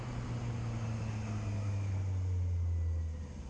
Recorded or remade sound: recorded